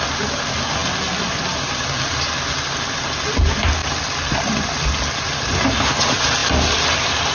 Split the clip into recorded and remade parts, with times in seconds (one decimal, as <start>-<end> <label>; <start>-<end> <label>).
0.0-3.8 recorded; 3.8-5.6 remade; 5.6-6.4 recorded; 6.4-7.3 remade

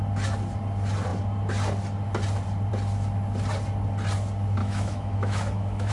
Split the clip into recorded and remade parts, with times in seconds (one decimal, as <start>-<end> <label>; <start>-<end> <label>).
0.0-4.6 recorded; 4.6-5.9 remade

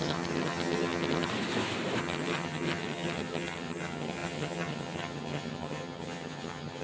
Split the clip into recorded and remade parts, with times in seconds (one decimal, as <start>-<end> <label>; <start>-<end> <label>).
0.0-1.3 remade; 1.3-2.0 recorded; 2.0-6.8 remade

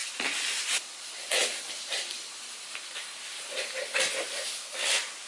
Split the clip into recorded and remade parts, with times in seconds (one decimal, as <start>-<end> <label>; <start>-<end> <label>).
0.0-5.3 recorded